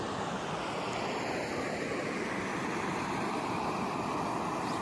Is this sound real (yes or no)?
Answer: yes